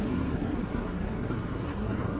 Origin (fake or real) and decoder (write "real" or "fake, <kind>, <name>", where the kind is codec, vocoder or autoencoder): fake, codec, SNAC